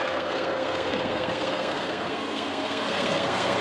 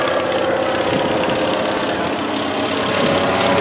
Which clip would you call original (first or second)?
second